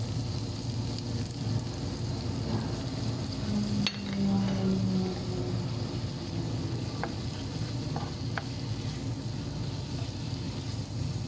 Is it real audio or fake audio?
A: real